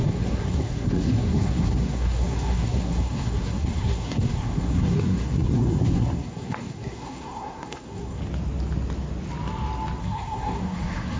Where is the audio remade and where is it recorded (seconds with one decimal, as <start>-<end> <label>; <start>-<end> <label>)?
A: 0.0-8.2 remade; 8.2-10.0 recorded; 10.0-11.2 remade